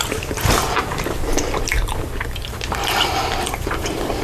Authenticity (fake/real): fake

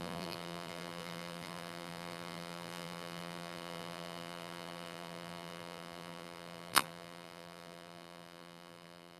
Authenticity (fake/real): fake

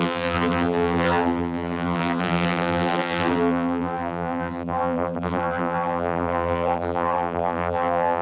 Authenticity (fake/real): fake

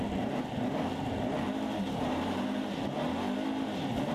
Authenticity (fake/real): real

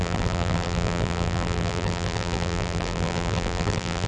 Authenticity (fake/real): fake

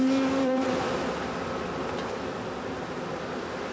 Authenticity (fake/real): fake